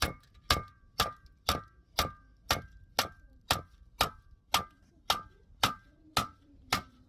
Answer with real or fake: fake